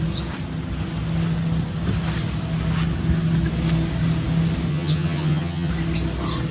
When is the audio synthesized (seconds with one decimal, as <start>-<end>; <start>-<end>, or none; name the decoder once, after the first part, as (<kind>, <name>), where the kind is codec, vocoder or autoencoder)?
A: 4.7-5.7 (vocoder, HiFi-GAN)